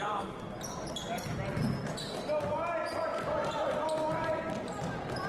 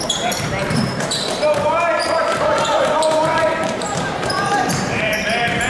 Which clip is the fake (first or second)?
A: second